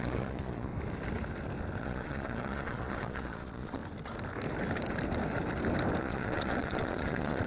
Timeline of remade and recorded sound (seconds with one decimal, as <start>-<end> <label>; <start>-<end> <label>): 0.0-0.7 remade; 0.7-1.8 recorded; 1.8-3.8 remade; 3.8-6.0 recorded; 6.0-7.5 remade